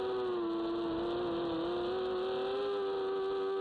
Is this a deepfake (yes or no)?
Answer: no